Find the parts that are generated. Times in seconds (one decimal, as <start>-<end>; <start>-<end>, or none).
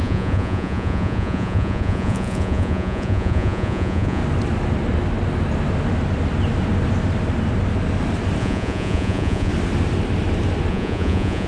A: 0.0-4.2; 8.4-9.5; 10.7-11.5